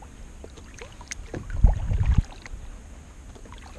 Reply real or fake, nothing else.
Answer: real